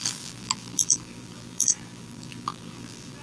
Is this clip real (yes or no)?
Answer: no